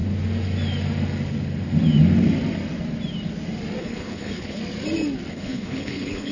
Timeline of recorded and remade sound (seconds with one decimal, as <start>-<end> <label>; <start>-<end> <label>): 0.0-3.8 recorded; 3.8-4.6 remade; 4.6-5.3 recorded; 5.3-6.3 remade